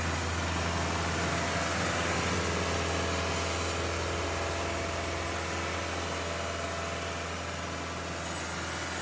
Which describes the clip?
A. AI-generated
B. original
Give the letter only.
B